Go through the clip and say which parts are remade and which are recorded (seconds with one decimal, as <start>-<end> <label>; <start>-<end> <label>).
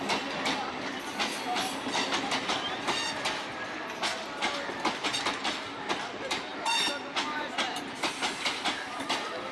0.0-9.5 recorded